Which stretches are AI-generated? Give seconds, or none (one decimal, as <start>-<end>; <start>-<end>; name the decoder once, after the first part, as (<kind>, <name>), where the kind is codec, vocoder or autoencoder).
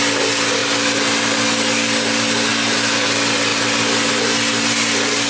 none